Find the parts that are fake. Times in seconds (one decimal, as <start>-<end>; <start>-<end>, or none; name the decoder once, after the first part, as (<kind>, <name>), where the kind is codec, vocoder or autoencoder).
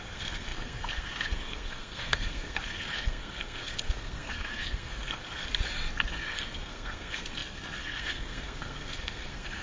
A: 0.0-5.4 (codec, SNAC); 6.1-9.6